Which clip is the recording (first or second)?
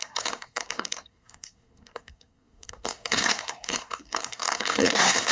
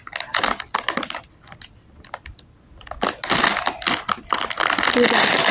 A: second